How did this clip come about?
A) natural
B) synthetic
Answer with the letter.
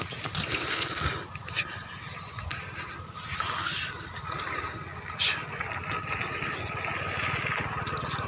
A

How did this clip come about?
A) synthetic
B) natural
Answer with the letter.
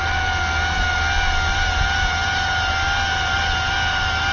B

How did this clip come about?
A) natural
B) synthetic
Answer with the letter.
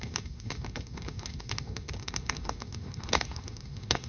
B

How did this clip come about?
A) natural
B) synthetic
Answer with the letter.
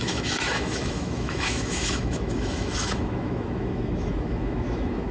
B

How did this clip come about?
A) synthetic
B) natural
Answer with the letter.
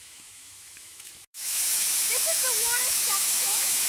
A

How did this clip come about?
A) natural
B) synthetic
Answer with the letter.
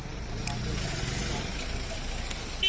A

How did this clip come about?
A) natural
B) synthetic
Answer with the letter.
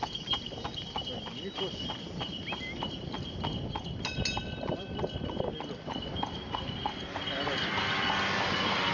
A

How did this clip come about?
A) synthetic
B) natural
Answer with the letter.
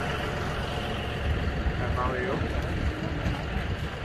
B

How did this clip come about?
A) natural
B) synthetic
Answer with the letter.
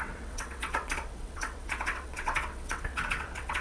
B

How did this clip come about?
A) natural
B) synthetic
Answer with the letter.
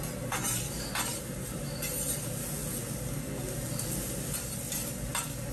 A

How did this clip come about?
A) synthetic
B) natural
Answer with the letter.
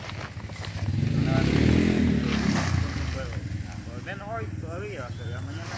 B